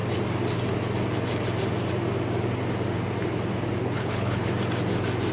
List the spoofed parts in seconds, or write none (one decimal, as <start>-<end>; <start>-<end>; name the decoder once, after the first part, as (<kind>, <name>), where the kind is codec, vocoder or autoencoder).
3.8-4.5 (codec, HILCodec)